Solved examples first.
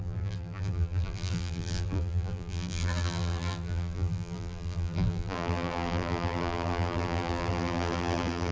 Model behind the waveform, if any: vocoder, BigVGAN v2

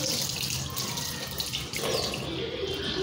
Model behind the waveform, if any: none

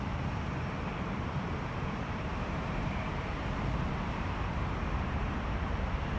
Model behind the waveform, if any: vocoder, BigVGAN v2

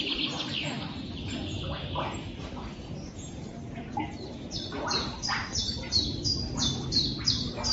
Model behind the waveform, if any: none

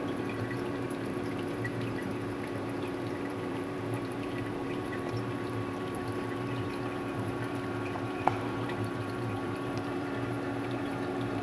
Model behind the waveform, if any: vocoder, BigVGAN v2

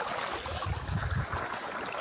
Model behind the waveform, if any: none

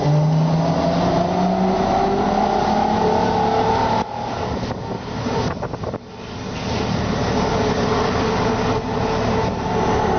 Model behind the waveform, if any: none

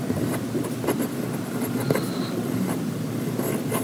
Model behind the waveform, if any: none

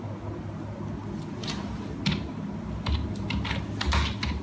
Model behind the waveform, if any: none